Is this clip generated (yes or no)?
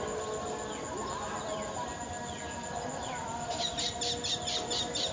no